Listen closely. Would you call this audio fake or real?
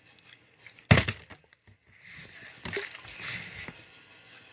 real